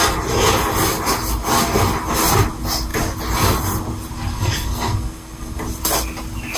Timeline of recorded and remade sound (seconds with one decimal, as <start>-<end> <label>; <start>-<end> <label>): 0.0-4.3 recorded; 4.3-5.6 remade; 5.6-6.6 recorded